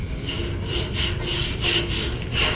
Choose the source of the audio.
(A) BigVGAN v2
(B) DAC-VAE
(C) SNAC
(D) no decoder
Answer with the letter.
D